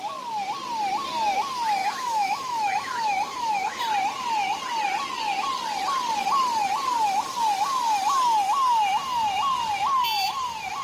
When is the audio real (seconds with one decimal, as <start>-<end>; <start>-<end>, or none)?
0.0-1.8; 3.8-10.8